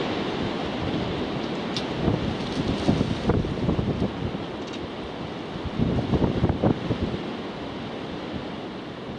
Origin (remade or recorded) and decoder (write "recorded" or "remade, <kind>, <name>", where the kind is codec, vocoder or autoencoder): recorded